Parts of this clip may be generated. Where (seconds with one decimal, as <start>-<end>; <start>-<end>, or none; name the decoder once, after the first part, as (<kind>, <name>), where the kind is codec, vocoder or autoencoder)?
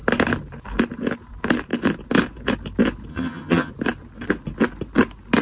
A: 3.1-3.7 (vocoder, HiFi-GAN)